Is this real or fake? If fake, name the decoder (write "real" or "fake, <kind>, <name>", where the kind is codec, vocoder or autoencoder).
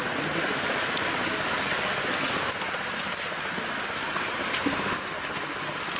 real